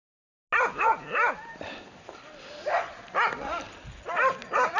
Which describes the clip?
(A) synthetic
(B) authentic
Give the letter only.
B